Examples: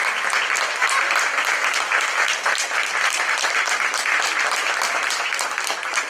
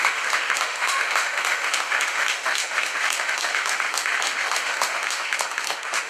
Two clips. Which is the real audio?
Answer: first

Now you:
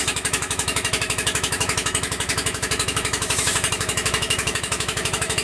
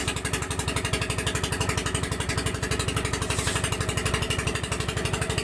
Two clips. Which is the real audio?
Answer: second